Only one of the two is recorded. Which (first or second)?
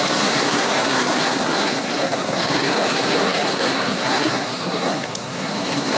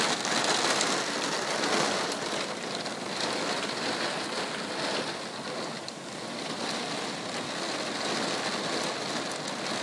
second